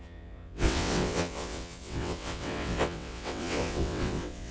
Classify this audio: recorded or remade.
remade